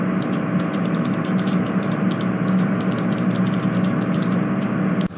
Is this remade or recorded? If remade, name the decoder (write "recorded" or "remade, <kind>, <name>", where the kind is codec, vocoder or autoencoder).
recorded